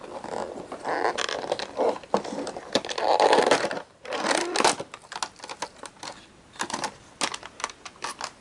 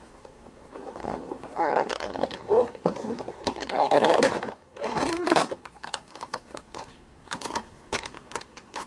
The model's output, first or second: second